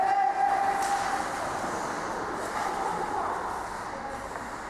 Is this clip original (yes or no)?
yes